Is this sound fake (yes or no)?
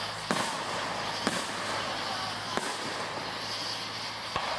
no